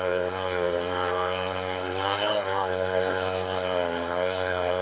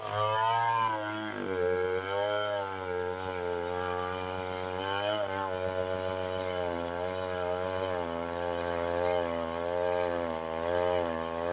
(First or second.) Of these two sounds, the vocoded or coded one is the first